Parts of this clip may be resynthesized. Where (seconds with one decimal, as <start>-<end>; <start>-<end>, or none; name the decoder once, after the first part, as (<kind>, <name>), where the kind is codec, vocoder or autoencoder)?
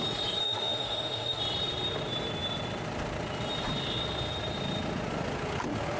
0.4-1.4 (autoencoder, DAC-VAE)